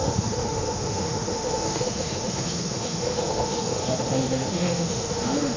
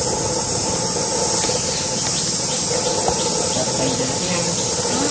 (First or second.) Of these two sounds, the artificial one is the first